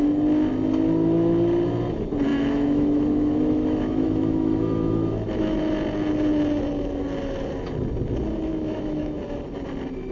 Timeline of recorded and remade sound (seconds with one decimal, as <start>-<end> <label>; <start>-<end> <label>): 0.0-2.3 recorded; 2.3-5.6 remade; 5.6-8.5 recorded; 8.5-9.2 remade; 9.2-10.1 recorded